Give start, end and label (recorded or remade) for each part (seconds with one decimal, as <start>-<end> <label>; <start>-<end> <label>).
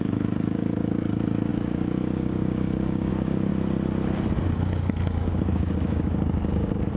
0.0-3.5 remade; 3.5-4.4 recorded; 4.4-7.0 remade